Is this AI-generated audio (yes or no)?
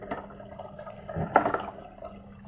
no